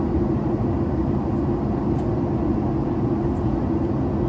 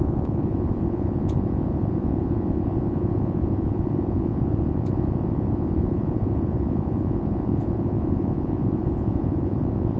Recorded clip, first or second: first